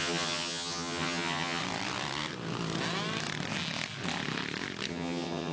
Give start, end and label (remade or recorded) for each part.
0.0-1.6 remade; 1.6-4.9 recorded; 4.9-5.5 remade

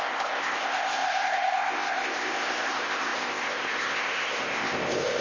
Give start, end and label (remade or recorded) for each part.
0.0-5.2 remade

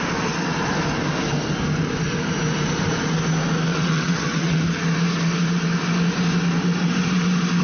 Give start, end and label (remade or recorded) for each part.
0.0-3.7 recorded; 3.7-4.6 remade; 4.6-7.6 recorded